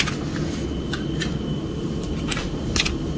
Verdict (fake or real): real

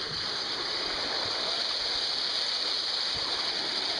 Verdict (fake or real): real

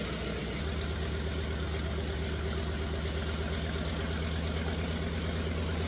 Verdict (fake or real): real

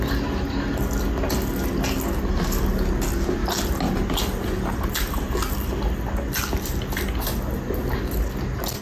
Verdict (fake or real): real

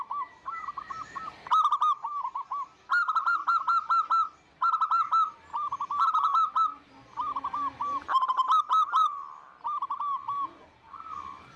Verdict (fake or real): real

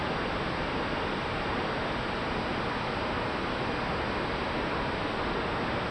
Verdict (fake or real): real